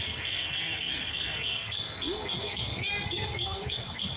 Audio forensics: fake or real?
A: fake